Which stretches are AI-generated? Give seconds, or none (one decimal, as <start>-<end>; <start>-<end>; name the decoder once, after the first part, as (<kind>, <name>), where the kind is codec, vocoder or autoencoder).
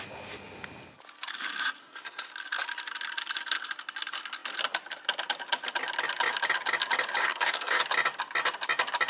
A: 1.8-2.3 (codec, SNAC); 7.2-7.8